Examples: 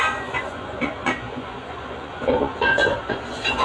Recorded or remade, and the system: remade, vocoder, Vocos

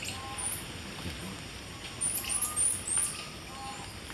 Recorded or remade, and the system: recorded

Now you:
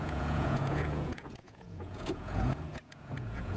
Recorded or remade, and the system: remade, vocoder, Vocos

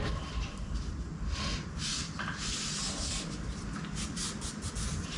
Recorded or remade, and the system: recorded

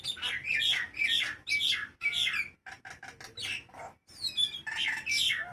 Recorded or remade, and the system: recorded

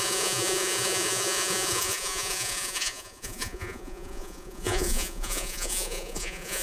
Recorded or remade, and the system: remade, vocoder, Vocos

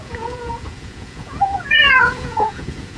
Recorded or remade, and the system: remade, vocoder, Vocos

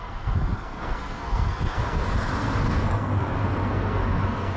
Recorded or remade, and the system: remade, codec, SNAC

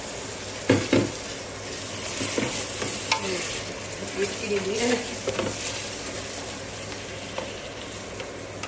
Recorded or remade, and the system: recorded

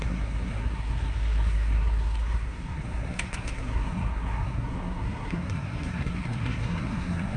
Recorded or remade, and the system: remade, codec, SNAC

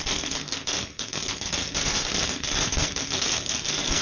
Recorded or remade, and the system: remade, codec, SNAC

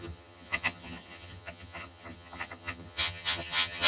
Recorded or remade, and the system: remade, vocoder, HiFi-GAN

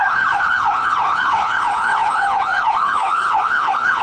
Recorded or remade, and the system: remade, codec, HILCodec